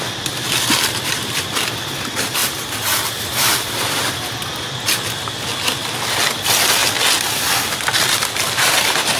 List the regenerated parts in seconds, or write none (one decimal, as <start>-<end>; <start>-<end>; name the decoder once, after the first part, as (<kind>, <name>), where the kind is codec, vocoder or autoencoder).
none